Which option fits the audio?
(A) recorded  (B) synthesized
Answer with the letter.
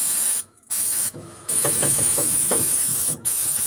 B